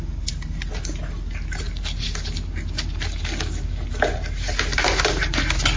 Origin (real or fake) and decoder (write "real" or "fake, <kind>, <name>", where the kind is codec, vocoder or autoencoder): real